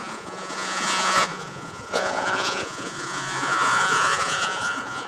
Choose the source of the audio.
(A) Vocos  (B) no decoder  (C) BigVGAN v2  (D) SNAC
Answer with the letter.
A